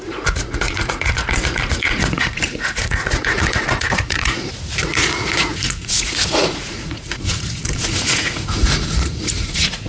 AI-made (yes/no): yes